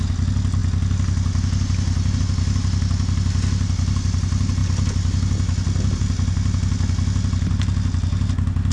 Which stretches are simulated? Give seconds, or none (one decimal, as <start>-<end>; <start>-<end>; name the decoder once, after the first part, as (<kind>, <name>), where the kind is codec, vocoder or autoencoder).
none